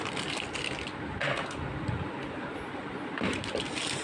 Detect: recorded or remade recorded